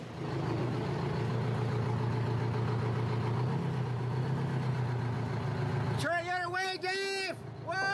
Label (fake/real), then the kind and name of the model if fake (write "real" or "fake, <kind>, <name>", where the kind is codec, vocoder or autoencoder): real